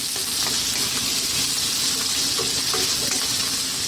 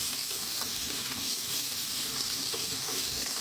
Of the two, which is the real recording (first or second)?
first